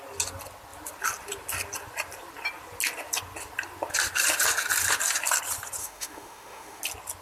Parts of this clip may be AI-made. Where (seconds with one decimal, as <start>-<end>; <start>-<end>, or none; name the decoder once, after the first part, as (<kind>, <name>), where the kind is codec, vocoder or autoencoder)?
5.8-6.8 (autoencoder, DAC-VAE)